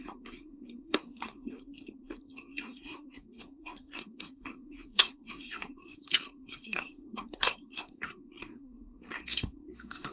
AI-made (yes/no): yes